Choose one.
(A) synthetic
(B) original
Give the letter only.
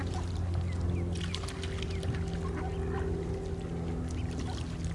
B